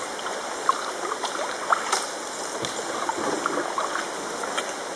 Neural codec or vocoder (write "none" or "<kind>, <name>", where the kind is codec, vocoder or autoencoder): none